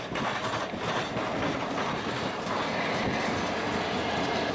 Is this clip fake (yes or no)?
no